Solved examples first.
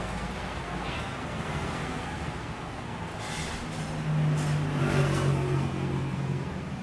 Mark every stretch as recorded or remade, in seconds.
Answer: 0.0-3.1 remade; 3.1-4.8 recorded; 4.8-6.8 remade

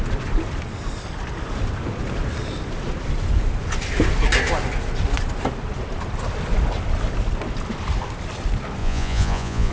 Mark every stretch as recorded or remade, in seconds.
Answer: 0.0-8.8 recorded; 8.8-9.7 remade

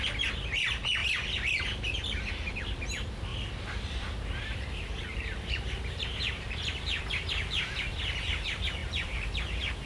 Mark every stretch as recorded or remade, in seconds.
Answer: 0.0-3.3 recorded; 3.3-7.0 remade; 7.0-8.8 recorded; 8.8-9.9 remade

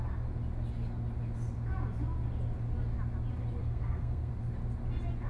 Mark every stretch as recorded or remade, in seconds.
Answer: 0.0-3.6 recorded; 3.6-4.3 remade; 4.3-5.3 recorded

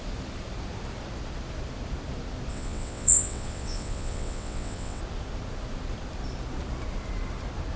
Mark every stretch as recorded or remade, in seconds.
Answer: 0.0-2.5 recorded; 2.5-5.0 remade; 5.0-7.8 recorded

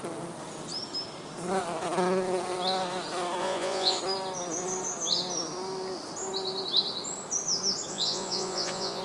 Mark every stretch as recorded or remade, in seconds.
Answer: 0.0-3.4 recorded; 3.4-4.0 remade; 4.0-7.9 recorded; 7.9-9.0 remade

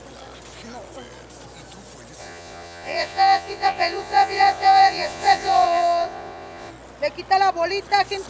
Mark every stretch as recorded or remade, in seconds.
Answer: 0.0-2.2 recorded; 2.2-6.7 remade; 6.7-8.3 recorded